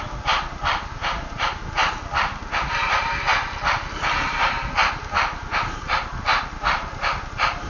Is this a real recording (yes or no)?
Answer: yes